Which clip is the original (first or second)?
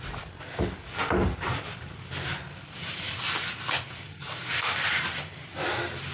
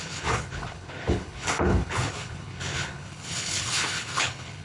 first